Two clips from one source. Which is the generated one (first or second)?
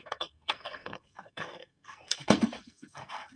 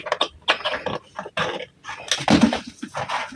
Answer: first